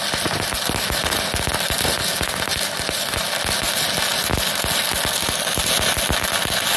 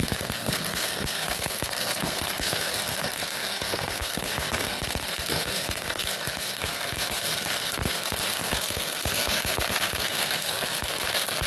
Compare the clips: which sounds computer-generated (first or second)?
second